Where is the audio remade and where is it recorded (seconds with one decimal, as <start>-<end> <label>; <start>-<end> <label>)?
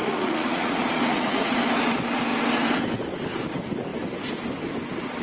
0.0-1.6 remade; 1.6-5.2 recorded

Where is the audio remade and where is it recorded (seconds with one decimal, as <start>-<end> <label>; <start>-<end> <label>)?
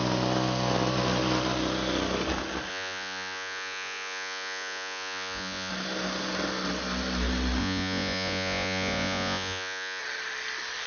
0.0-2.7 recorded; 2.7-5.7 remade; 5.7-7.6 recorded; 7.6-10.0 remade; 10.0-10.9 recorded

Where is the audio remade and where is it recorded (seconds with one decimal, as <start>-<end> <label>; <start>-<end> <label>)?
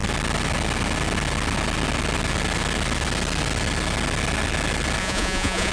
0.0-5.0 recorded; 5.0-5.7 remade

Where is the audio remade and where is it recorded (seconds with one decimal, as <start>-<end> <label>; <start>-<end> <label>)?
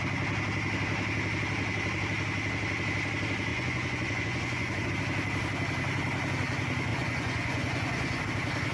0.0-3.5 recorded; 3.5-4.9 remade; 4.9-6.9 recorded; 6.9-8.2 remade; 8.2-8.7 recorded